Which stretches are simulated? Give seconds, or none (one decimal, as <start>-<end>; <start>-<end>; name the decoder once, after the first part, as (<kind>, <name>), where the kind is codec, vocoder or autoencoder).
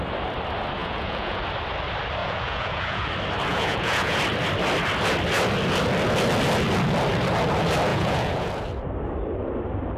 0.8-1.4 (vocoder, Vocos); 2.2-3.1; 3.5-4.2; 7.9-8.5